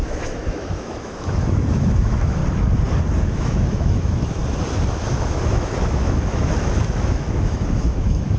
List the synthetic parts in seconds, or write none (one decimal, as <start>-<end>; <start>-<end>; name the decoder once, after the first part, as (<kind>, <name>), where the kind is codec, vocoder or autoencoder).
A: 0.0-2.4 (autoencoder, DAC-VAE); 3.2-4.4; 5.1-8.4